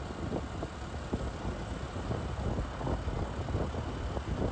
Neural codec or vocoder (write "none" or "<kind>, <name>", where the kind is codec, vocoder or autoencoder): none